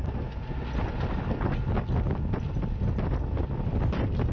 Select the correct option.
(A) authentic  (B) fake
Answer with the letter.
A